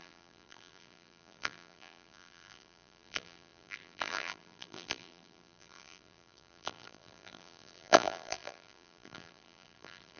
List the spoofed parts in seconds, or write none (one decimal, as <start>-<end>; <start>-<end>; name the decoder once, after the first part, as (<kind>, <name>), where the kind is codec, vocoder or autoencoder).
0.0-10.2 (vocoder, BigVGAN v2)